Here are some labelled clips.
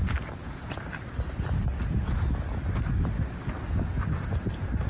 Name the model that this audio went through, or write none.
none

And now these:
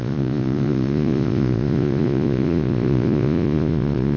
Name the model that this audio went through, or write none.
vocoder, Vocos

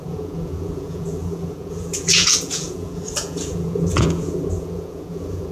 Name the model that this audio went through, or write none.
vocoder, Vocos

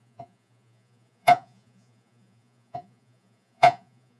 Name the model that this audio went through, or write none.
vocoder, Vocos